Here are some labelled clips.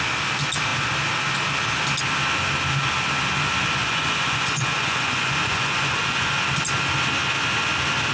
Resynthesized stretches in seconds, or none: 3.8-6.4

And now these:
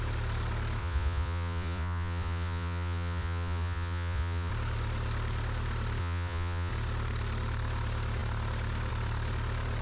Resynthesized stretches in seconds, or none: 0.8-4.5; 6.0-6.7

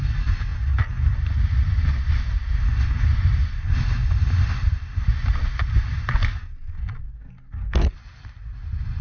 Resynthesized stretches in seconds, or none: none

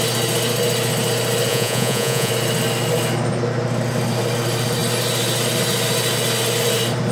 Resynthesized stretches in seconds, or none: 1.5-2.3

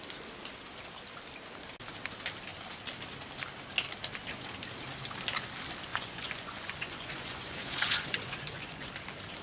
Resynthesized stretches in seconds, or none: 5.9-8.9

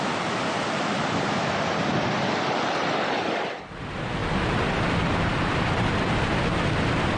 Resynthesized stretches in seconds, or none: none